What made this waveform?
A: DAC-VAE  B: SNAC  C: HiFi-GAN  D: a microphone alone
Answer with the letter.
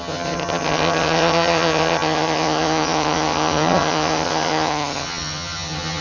C